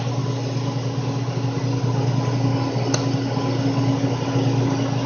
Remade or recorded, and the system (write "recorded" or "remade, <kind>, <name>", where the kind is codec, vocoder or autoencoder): recorded